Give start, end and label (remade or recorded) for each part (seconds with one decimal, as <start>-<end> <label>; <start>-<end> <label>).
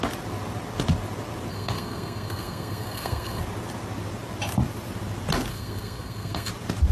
0.0-1.5 recorded; 1.5-3.4 remade; 3.4-5.5 recorded; 5.5-6.5 remade; 6.5-6.9 recorded